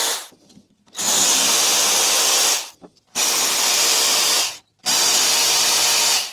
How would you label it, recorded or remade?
remade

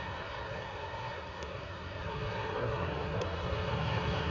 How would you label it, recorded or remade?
remade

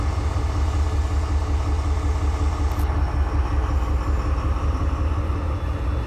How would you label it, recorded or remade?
recorded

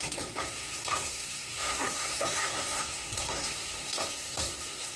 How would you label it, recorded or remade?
remade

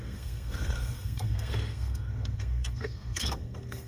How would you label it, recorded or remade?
remade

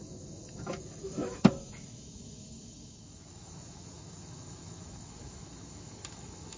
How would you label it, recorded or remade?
remade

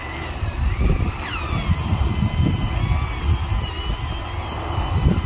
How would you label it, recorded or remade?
recorded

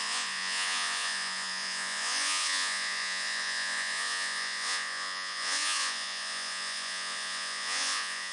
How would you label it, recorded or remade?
remade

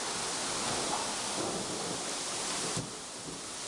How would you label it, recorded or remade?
recorded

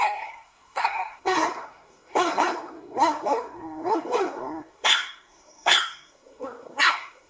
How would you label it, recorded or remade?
remade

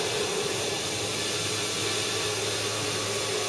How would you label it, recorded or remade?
recorded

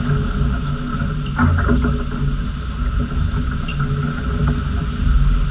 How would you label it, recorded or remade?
recorded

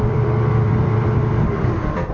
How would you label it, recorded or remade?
remade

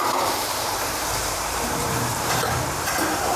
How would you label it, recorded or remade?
remade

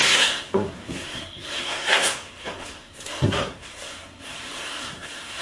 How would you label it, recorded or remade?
remade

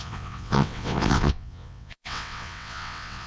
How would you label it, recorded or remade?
remade